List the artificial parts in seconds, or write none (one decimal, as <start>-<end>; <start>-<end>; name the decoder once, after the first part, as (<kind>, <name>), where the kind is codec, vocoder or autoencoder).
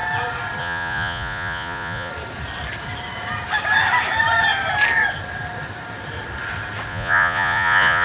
0.6-2.1 (vocoder, Vocos); 6.9-8.0